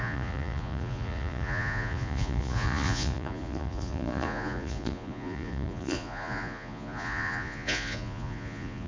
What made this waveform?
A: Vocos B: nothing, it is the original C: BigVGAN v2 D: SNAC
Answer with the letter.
A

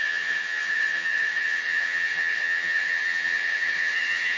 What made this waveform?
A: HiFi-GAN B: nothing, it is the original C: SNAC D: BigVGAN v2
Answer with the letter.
A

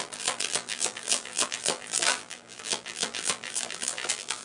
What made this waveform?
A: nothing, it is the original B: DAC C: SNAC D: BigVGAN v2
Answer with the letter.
D